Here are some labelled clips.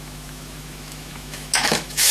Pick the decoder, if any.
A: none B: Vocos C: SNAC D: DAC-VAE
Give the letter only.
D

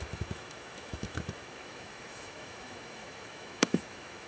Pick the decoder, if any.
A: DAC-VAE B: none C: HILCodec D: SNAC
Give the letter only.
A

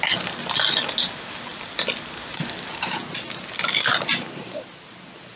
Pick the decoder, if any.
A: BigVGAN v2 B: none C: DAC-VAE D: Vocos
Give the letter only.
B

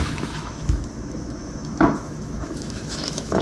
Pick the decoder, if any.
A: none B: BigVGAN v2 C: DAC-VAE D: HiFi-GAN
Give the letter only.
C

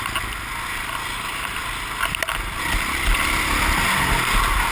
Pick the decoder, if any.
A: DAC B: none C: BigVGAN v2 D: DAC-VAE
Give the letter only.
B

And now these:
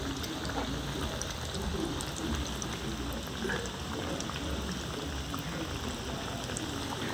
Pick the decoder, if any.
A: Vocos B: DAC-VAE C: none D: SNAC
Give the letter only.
C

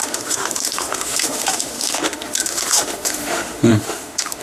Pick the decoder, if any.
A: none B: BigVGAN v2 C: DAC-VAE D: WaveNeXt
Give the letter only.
C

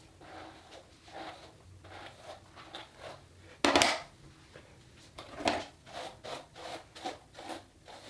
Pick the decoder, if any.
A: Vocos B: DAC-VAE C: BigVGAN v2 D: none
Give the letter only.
D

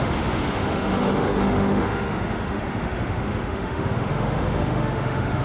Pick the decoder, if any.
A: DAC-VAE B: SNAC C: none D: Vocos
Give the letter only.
A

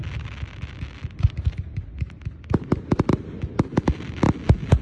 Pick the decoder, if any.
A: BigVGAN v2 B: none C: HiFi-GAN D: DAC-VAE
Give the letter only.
B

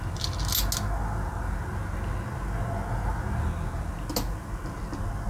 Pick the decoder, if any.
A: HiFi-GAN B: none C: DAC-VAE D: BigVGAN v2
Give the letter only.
B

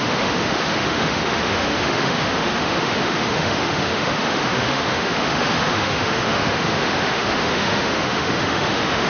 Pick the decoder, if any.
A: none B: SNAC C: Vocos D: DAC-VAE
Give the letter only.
D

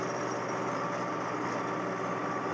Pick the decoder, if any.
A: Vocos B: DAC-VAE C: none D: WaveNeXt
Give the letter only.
C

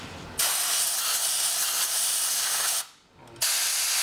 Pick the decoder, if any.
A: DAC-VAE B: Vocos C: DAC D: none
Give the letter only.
D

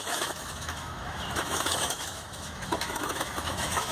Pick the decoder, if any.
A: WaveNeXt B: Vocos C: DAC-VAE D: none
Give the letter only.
C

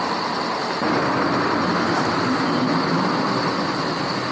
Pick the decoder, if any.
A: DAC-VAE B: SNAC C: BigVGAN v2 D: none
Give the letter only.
D